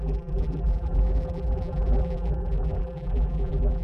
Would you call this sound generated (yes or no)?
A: yes